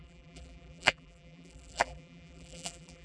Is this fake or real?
fake